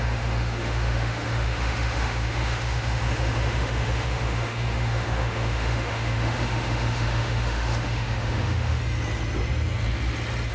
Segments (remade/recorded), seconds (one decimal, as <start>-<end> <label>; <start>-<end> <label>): 0.0-8.8 remade; 8.8-10.5 recorded